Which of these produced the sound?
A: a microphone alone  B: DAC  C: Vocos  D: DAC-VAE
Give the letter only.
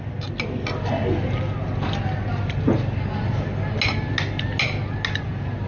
A